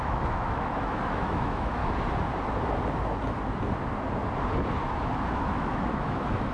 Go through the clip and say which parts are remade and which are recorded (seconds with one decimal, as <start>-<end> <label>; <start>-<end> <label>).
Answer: 0.0-1.8 remade; 1.8-5.3 recorded; 5.3-6.5 remade

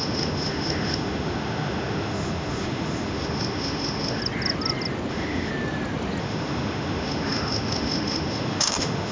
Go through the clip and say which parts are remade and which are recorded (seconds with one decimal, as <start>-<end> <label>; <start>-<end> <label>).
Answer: 0.0-4.2 remade; 4.2-5.1 recorded; 5.1-5.5 remade; 5.5-6.2 recorded; 6.2-9.1 remade

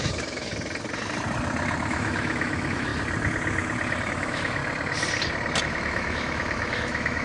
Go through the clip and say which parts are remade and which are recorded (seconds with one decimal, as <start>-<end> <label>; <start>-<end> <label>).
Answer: 0.0-0.5 remade; 0.5-1.9 recorded; 1.9-2.9 remade; 2.9-4.1 recorded; 4.1-4.6 remade; 4.6-5.6 recorded; 5.6-7.2 remade

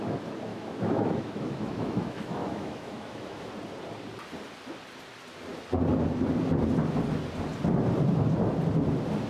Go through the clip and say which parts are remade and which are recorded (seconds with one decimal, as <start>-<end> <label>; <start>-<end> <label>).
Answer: 0.0-0.5 recorded; 0.5-3.5 remade; 3.5-9.3 recorded